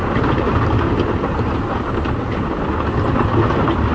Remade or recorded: recorded